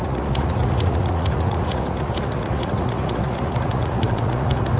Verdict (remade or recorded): remade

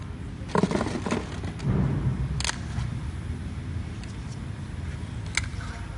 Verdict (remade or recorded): recorded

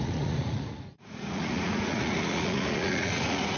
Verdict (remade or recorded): remade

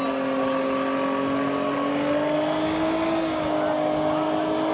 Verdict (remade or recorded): recorded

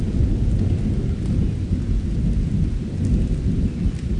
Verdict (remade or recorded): recorded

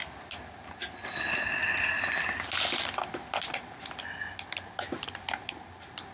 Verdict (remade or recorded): recorded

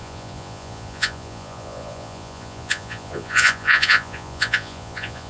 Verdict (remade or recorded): remade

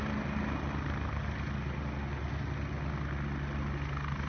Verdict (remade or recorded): recorded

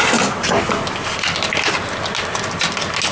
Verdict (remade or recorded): recorded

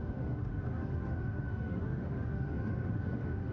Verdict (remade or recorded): remade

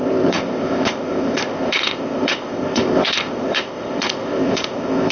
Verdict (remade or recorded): remade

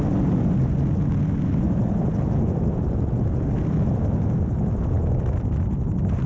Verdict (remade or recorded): recorded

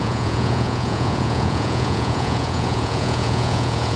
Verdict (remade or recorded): remade